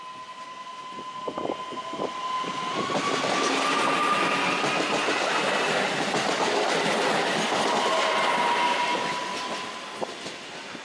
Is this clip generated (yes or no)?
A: no